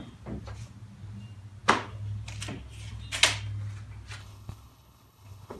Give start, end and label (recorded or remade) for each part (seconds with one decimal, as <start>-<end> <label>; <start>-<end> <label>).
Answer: 0.0-4.2 recorded; 4.2-5.6 remade

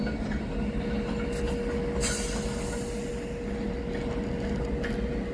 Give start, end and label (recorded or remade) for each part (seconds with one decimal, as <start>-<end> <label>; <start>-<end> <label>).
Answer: 0.0-5.3 recorded

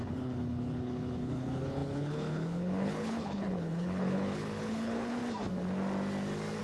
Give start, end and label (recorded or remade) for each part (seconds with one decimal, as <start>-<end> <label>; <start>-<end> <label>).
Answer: 0.0-5.2 remade; 5.2-6.6 recorded

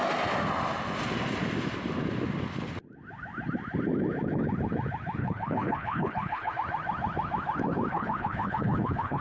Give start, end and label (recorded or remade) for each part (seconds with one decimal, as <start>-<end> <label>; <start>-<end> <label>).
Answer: 0.0-5.2 recorded; 5.2-6.5 remade; 6.5-7.9 recorded; 7.9-9.2 remade

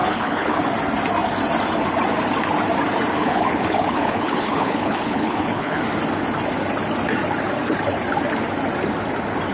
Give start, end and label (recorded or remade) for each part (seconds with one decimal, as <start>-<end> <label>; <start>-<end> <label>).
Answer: 0.0-0.6 remade; 0.6-3.2 recorded; 3.2-5.8 remade; 5.8-9.5 recorded

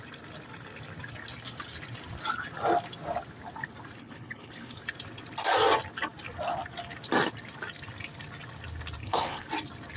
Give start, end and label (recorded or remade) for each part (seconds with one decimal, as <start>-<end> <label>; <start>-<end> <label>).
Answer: 0.0-4.0 recorded; 4.0-4.8 remade; 4.8-9.0 recorded; 9.0-9.5 remade; 9.5-10.0 recorded

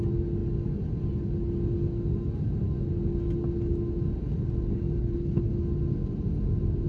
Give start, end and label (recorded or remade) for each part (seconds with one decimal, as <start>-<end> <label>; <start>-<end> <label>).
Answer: 0.0-5.0 recorded; 5.0-5.5 remade; 5.5-6.9 recorded

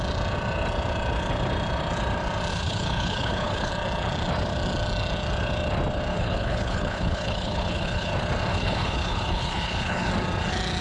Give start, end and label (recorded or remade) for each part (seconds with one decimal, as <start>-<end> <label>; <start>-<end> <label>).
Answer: 0.0-2.5 recorded; 2.5-3.7 remade; 3.7-6.1 recorded; 6.1-8.1 remade; 8.1-8.5 recorded; 8.5-10.1 remade; 10.1-10.8 recorded